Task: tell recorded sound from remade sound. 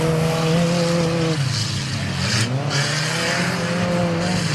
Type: recorded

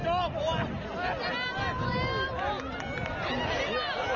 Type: recorded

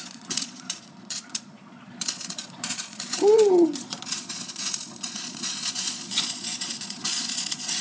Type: remade